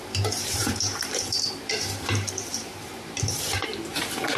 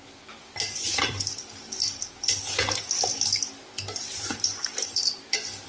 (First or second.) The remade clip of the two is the first